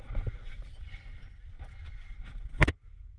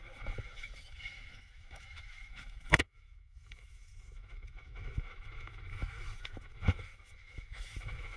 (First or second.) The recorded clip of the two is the first